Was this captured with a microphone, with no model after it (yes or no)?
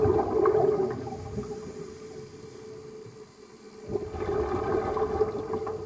yes